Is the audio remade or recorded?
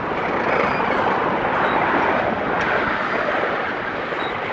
recorded